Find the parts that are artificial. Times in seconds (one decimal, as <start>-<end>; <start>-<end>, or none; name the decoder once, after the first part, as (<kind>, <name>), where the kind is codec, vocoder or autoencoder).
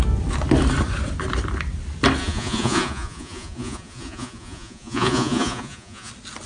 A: 2.2-6.1 (vocoder, Vocos)